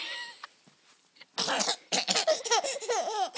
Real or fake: real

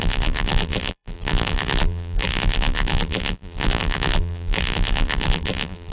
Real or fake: fake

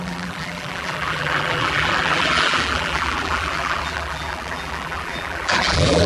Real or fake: fake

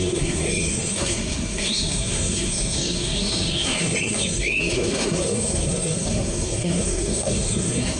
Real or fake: fake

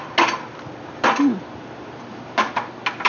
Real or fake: real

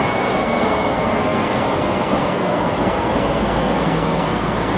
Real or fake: fake